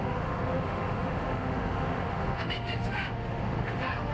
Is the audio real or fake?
fake